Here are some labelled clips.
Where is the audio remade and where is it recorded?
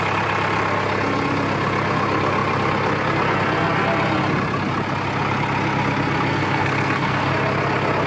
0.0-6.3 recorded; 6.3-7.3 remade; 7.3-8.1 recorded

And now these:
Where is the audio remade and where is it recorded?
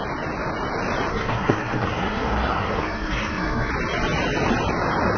0.0-1.1 recorded; 1.1-3.7 remade; 3.7-5.2 recorded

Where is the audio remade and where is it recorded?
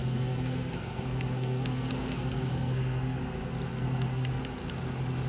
0.0-3.2 remade; 3.2-3.7 recorded; 3.7-4.4 remade; 4.4-5.3 recorded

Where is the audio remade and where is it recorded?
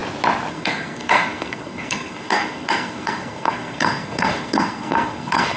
0.0-0.5 recorded; 0.5-5.6 remade